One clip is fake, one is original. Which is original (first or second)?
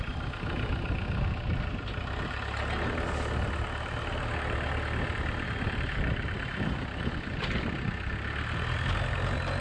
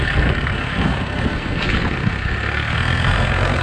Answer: first